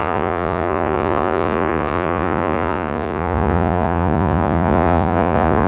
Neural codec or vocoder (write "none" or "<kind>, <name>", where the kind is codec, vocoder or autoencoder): vocoder, Vocos